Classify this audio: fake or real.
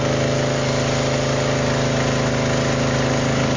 real